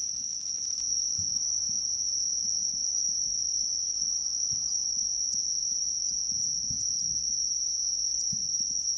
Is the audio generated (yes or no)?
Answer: yes